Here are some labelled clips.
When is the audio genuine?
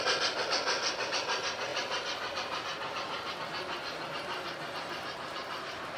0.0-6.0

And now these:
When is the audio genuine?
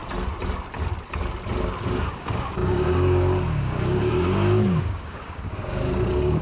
0.0-1.8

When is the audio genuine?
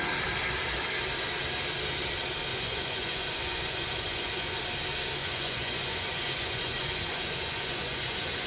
0.0-2.5; 4.6-5.2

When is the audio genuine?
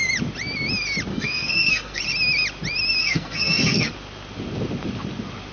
0.0-1.1; 2.0-3.0; 3.9-5.5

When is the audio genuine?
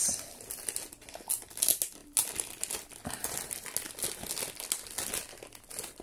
0.0-6.0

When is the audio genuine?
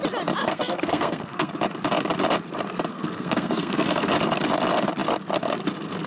0.0-0.4; 1.5-2.9; 4.1-6.1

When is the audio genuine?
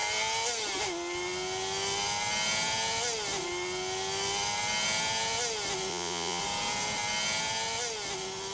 0.0-5.9; 6.4-8.5